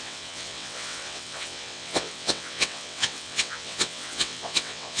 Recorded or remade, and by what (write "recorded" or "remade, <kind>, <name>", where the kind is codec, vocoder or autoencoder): remade, vocoder, WaveNeXt